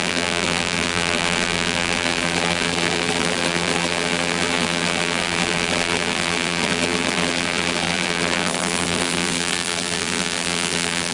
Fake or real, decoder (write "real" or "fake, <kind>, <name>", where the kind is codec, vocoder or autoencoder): fake, vocoder, BigVGAN v2